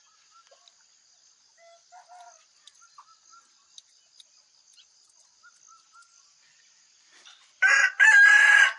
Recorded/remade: recorded